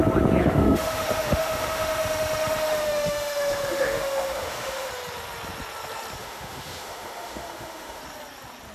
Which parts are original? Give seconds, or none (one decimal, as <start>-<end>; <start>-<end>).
0.0-0.4; 4.9-6.2; 8.0-8.7